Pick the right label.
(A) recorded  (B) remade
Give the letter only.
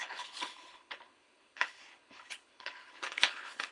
B